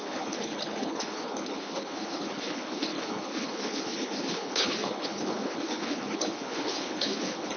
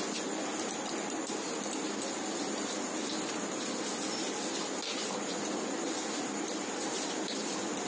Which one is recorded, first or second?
second